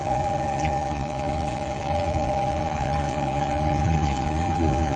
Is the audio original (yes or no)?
no